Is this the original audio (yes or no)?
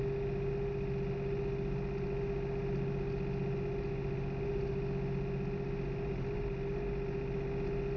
yes